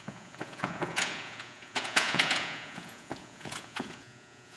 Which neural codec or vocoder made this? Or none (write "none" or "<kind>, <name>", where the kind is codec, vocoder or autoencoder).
vocoder, Vocos